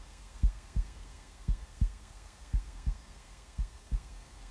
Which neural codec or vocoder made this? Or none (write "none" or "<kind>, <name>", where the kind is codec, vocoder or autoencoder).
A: codec, SNAC